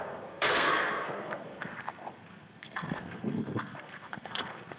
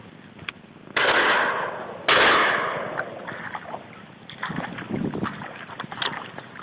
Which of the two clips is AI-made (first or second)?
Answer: first